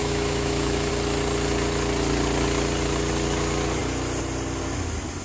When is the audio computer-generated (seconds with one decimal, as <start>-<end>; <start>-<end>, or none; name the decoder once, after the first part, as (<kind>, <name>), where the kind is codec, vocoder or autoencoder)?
0.0-0.9 (autoencoder, DAC-VAE)